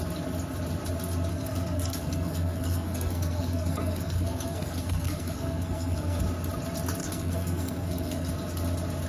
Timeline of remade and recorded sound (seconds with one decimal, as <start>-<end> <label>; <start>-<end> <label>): 0.0-1.3 recorded; 1.3-6.2 remade; 6.2-7.0 recorded; 7.0-8.3 remade; 8.3-9.1 recorded